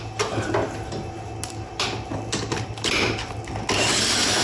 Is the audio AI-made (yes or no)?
no